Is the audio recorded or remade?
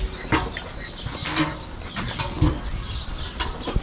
recorded